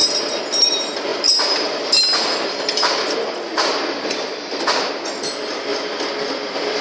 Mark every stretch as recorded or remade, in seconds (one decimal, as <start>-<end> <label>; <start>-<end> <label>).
0.0-0.7 recorded; 0.7-5.7 remade; 5.7-6.3 recorded; 6.3-6.8 remade